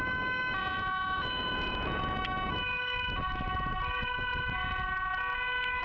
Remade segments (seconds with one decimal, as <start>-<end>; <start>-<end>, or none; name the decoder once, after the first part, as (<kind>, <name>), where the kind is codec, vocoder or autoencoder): 0.6-2.0 (vocoder, Vocos)